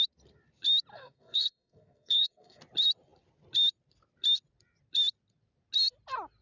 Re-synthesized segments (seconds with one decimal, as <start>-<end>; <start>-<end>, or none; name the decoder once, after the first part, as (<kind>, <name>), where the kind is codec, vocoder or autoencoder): 0.9-2.6 (codec, SNAC)